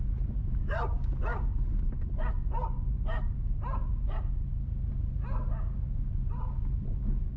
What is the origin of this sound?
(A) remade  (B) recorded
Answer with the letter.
B